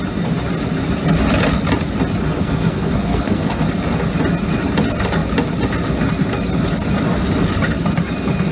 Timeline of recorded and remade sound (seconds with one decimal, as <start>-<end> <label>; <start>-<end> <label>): 0.0-2.2 recorded; 2.2-3.6 remade; 3.6-8.5 recorded